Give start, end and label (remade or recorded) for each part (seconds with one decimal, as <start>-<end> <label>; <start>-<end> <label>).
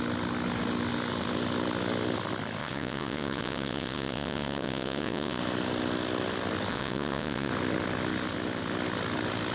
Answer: 0.0-2.6 recorded; 2.6-5.4 remade; 5.4-6.7 recorded; 6.7-7.5 remade; 7.5-9.5 recorded